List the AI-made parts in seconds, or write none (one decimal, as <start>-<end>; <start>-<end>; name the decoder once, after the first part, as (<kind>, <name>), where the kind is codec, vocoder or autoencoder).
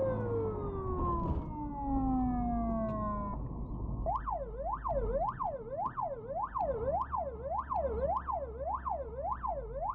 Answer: none